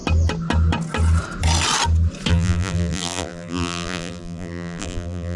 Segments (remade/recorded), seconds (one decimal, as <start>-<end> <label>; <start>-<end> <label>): 0.0-2.3 recorded; 2.3-5.4 remade